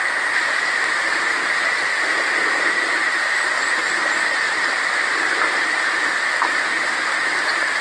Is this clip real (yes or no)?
yes